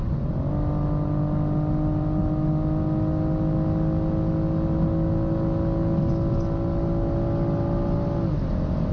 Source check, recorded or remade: recorded